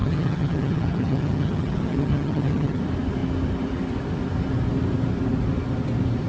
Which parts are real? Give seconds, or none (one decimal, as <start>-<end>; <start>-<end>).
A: 2.8-6.3